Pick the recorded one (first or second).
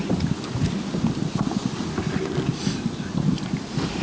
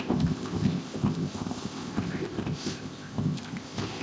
first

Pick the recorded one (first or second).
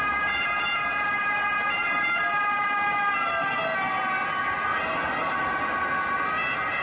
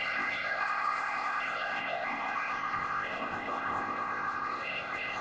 first